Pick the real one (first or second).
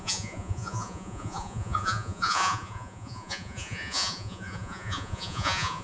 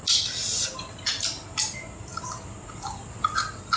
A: second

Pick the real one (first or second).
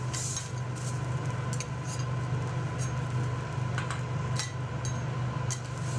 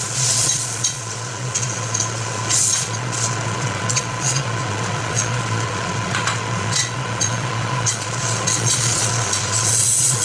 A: first